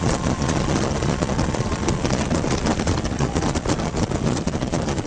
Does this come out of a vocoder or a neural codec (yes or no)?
yes